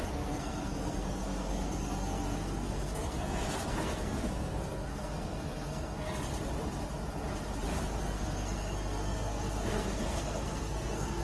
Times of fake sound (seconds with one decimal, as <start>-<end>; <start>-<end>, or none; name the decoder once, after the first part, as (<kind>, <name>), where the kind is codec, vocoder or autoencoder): 0.0-6.3 (codec, SNAC); 8.0-11.2